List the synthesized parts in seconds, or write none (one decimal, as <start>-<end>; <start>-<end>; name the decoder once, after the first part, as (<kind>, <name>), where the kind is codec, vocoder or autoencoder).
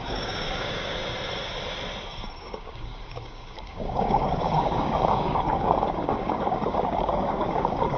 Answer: 0.0-1.0 (codec, DAC); 2.4-8.0